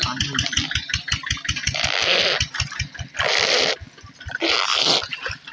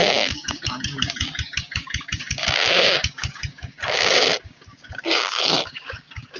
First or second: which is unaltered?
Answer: first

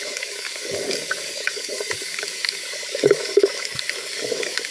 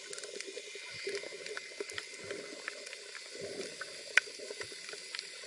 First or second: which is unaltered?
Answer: second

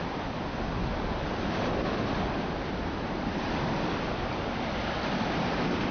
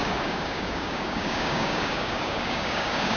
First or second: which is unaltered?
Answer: first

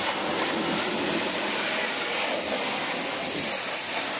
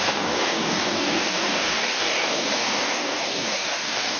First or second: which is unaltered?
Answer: first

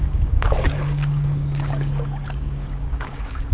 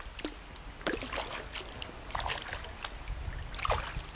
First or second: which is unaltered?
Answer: second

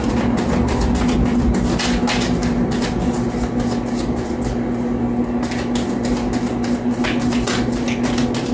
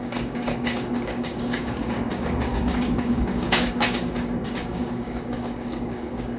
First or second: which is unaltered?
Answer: first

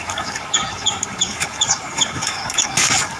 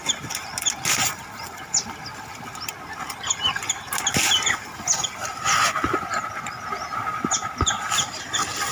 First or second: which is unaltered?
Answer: second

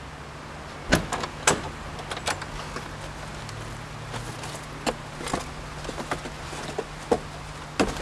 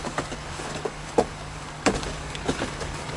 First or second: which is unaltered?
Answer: first